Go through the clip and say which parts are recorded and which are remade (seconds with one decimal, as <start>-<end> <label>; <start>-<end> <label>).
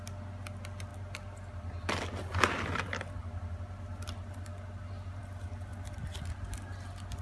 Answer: 0.0-7.2 recorded